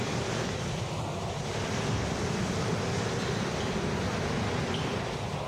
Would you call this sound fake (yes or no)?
no